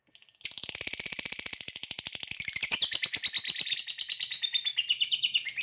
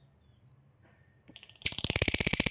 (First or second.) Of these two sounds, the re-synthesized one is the second